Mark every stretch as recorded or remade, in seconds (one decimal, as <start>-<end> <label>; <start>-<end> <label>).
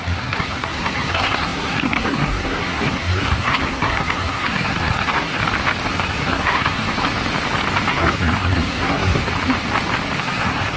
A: 0.0-5.4 remade; 5.4-5.9 recorded; 5.9-7.0 remade; 7.0-7.9 recorded; 7.9-9.2 remade; 9.2-10.2 recorded; 10.2-10.8 remade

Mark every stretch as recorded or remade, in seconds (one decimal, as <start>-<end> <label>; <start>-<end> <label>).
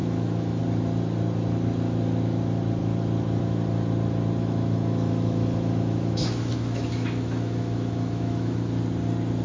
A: 0.0-0.6 remade; 0.6-4.4 recorded; 4.4-8.8 remade; 8.8-9.4 recorded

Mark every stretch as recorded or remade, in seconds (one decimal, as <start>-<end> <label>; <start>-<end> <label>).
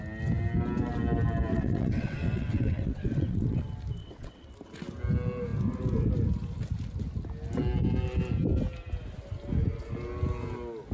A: 0.0-1.5 recorded; 1.5-3.6 remade; 3.6-4.0 recorded; 4.0-4.5 remade; 4.5-10.9 recorded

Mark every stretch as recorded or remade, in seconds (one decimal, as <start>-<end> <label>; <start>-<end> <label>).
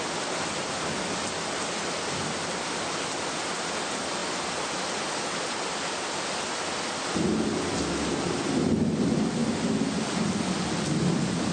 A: 0.0-11.5 recorded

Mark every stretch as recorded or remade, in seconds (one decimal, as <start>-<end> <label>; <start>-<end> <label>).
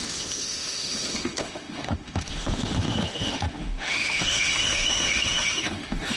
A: 0.0-6.2 remade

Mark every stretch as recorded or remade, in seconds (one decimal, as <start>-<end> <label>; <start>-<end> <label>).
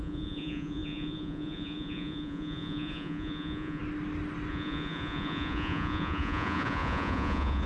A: 0.0-3.8 remade; 3.8-4.5 recorded; 4.5-7.7 remade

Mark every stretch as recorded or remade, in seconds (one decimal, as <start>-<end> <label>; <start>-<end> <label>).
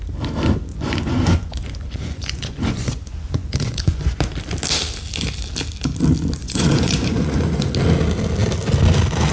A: 0.0-0.7 recorded; 0.7-4.2 remade; 4.2-6.4 recorded; 6.4-7.7 remade; 7.7-9.3 recorded